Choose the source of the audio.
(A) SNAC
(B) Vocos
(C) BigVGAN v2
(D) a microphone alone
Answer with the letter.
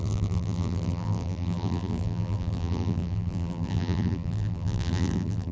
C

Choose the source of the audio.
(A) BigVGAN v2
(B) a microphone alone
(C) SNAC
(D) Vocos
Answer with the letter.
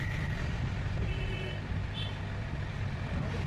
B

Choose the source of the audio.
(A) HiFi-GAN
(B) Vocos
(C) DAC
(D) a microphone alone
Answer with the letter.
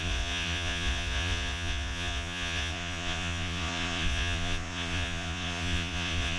B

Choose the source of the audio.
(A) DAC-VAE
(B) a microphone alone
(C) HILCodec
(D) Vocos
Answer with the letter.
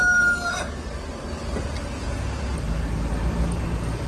B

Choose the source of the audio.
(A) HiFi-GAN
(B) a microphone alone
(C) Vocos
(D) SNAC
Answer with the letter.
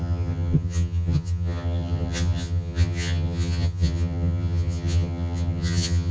A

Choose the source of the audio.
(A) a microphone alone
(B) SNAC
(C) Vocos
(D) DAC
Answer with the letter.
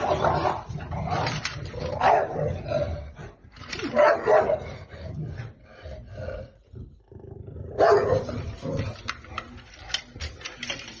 A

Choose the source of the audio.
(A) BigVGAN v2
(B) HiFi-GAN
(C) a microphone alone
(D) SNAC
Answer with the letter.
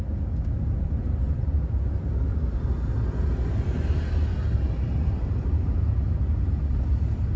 C